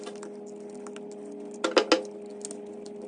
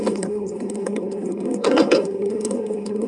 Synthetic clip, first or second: second